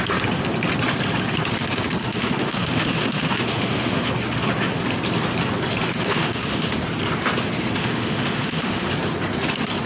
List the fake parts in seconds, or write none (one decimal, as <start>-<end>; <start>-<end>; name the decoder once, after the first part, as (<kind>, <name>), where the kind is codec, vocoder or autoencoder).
2.0-4.1 (autoencoder, DAC-VAE); 6.1-6.7; 7.8-8.9